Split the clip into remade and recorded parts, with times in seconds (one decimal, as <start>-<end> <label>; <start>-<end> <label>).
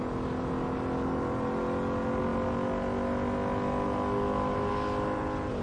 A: 0.0-5.6 recorded